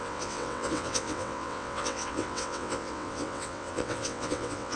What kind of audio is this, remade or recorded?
remade